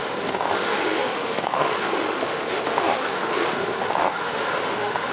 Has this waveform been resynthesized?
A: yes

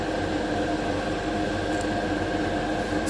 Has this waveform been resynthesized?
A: no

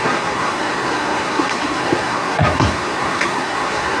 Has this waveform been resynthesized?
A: yes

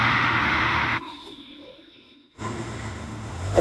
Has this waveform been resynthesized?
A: yes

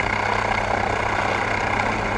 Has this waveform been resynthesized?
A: no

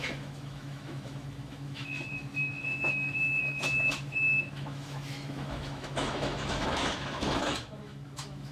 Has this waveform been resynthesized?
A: yes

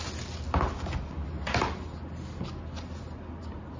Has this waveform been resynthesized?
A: no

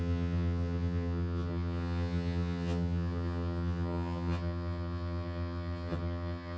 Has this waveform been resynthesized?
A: yes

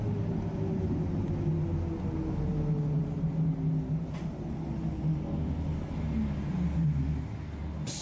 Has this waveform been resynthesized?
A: no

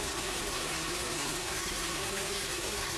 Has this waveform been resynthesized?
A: yes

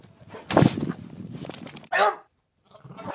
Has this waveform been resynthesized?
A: yes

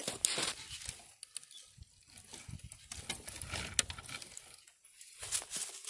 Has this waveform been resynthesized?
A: no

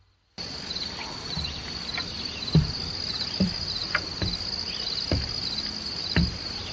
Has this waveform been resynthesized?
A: no